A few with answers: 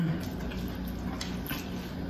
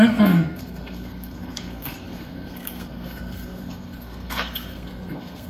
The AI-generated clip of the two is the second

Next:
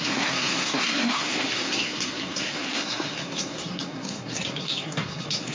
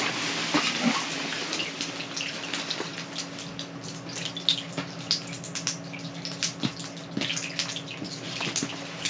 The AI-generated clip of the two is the first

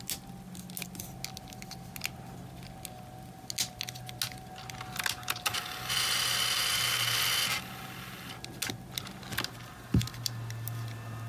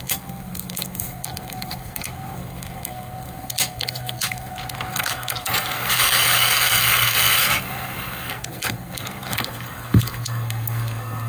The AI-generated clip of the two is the second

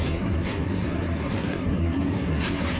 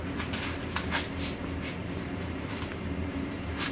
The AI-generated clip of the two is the first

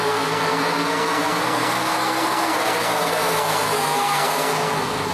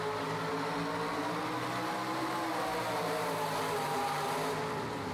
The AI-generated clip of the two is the first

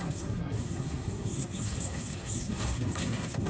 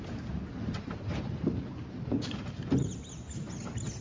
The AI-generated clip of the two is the first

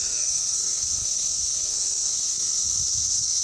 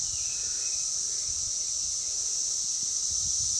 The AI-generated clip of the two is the first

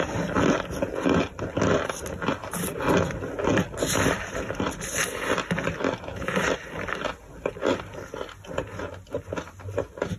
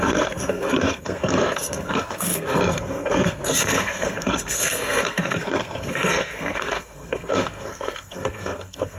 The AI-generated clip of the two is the second